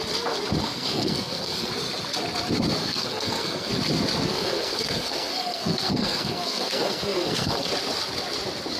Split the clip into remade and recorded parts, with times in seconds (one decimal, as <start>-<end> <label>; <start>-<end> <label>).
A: 0.0-0.6 recorded; 0.6-1.7 remade; 1.7-2.8 recorded; 2.8-3.7 remade; 3.7-4.3 recorded; 4.3-7.7 remade; 7.7-8.8 recorded